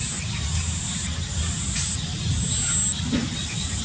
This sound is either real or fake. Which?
real